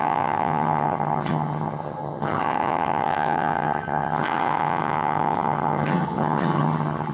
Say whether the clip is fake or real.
fake